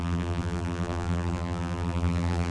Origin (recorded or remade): remade